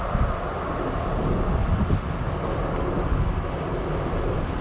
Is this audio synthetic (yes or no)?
no